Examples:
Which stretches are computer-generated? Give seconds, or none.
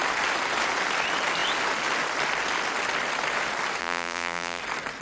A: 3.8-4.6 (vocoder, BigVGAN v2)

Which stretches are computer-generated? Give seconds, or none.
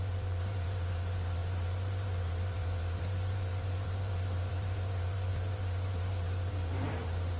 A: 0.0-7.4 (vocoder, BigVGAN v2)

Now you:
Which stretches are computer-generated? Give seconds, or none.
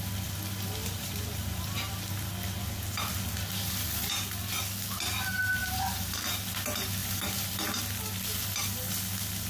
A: 0.8-1.9 (vocoder, BigVGAN v2); 5.6-6.3; 7.0-7.5